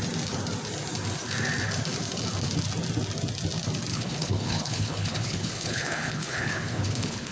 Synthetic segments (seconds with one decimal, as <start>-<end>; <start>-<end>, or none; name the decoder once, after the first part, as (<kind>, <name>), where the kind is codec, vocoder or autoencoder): 3.9-7.3 (codec, HILCodec)